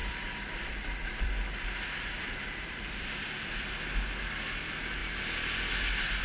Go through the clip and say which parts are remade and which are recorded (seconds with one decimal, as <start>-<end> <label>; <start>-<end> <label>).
0.0-3.7 remade; 3.7-6.2 recorded